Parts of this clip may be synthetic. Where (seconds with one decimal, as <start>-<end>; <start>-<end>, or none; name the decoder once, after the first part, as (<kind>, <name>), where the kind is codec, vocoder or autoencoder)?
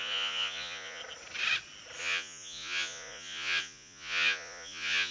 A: 0.0-1.0 (vocoder, Vocos); 2.0-5.1